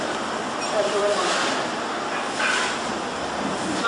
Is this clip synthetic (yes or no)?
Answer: no